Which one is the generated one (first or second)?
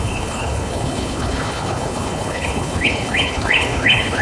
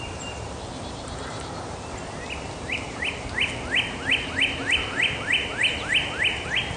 first